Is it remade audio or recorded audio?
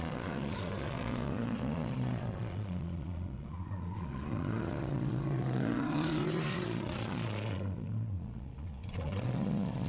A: remade